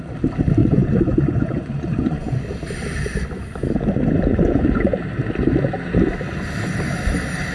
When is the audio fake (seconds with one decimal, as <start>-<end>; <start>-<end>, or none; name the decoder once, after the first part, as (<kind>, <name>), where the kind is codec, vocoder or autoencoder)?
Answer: 0.6-2.5 (vocoder, Vocos); 4.3-4.9